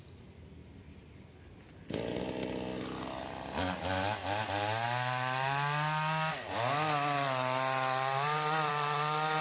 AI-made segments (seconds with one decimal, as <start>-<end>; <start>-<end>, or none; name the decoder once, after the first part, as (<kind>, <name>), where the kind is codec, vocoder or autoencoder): none